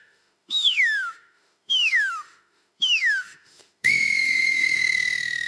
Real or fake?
fake